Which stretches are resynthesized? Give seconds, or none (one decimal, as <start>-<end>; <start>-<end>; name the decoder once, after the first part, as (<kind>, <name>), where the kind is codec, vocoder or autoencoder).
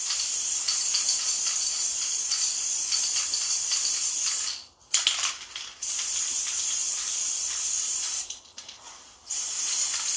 4.6-9.4 (vocoder, BigVGAN v2)